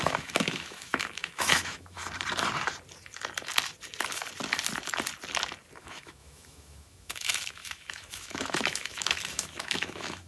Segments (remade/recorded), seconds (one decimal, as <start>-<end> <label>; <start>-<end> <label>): 0.0-2.0 remade; 2.0-5.8 recorded; 5.8-10.3 remade